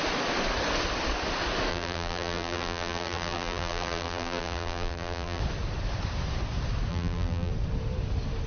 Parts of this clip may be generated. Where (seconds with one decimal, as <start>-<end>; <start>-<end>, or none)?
1.7-5.4; 6.9-7.5